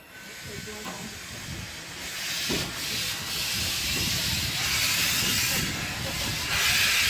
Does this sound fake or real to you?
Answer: real